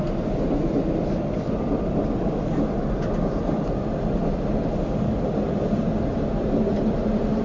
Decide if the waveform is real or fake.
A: real